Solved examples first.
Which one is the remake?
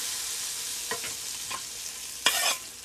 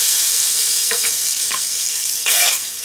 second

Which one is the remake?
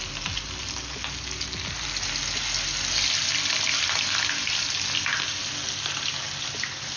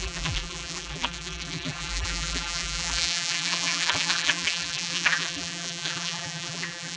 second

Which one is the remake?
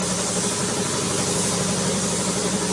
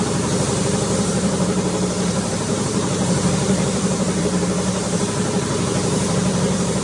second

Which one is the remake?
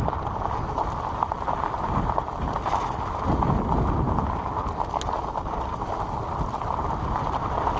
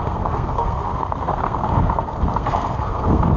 second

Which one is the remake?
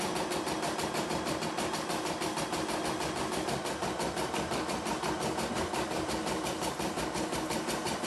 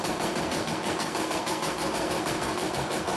second